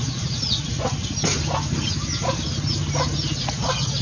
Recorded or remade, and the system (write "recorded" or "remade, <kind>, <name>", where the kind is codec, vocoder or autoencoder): recorded